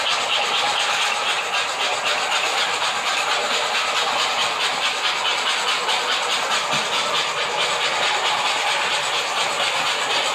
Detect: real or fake real